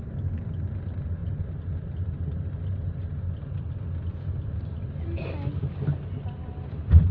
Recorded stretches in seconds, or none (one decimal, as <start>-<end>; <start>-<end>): 0.0-7.1